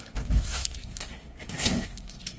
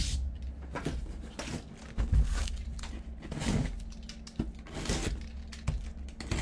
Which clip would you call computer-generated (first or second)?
first